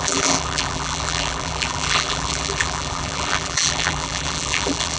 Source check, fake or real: fake